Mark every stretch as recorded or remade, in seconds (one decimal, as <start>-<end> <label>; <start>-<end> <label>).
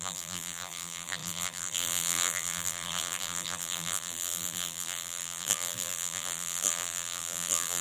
0.0-7.8 remade